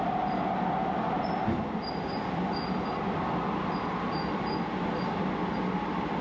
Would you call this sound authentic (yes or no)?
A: yes